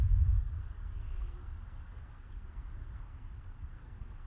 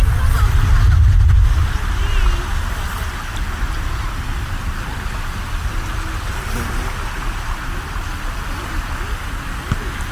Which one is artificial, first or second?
first